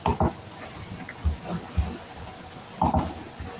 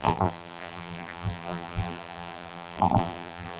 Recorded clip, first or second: first